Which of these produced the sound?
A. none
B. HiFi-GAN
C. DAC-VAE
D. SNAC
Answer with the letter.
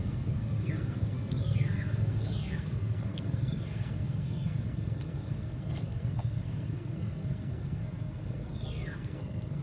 D